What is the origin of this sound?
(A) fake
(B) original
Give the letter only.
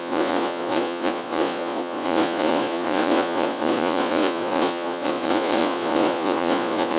A